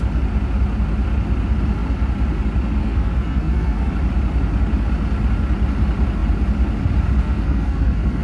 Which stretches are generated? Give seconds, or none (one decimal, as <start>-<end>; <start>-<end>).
2.8-3.9; 7.2-8.2